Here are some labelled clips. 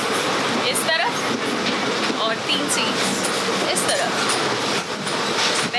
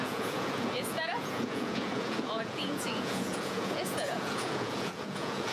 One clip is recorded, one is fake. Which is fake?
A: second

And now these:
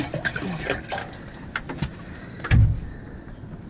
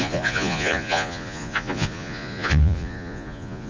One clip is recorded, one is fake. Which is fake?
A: second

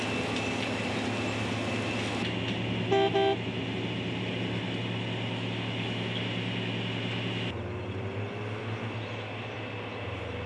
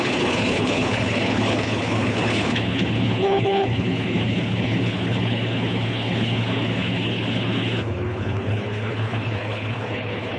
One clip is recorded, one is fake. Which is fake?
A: second